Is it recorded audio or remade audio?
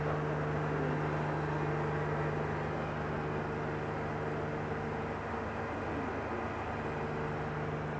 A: recorded